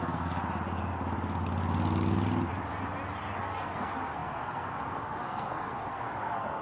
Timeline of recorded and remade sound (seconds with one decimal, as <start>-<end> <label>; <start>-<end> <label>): 0.0-0.4 remade; 0.4-3.4 recorded; 3.4-6.6 remade